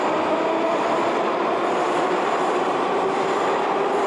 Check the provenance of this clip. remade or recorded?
recorded